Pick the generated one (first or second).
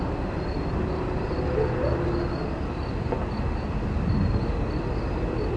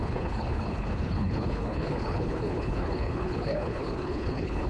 second